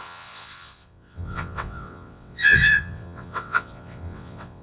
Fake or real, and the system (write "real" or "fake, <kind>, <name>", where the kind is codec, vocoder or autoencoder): fake, vocoder, WaveNeXt